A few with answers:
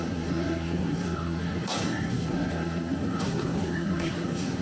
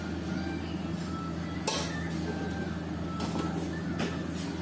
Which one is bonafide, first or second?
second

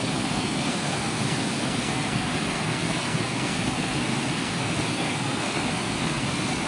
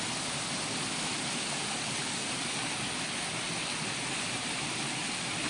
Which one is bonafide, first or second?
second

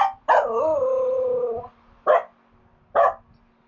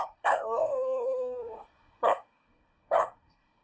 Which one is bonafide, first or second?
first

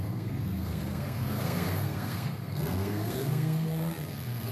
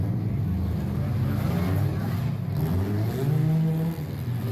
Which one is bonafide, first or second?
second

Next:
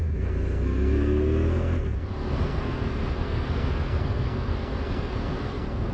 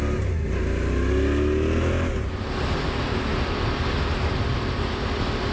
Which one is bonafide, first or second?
second